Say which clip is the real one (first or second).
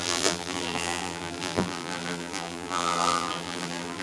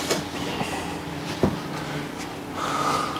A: second